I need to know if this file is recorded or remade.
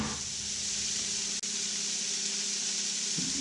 recorded